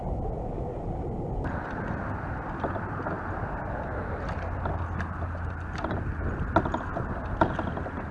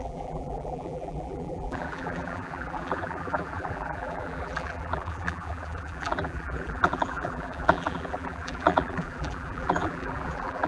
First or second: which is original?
first